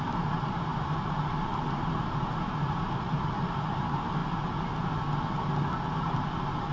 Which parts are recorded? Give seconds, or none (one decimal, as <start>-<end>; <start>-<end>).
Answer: 4.2-6.7